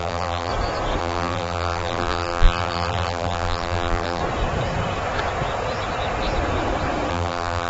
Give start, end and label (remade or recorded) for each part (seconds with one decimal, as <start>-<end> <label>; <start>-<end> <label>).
0.0-0.5 remade; 0.5-1.0 recorded; 1.0-4.2 remade; 4.2-7.1 recorded; 7.1-7.7 remade